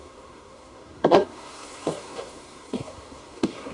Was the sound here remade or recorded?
remade